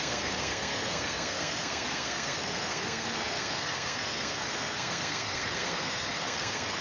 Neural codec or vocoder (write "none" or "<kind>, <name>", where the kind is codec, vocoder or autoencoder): codec, SNAC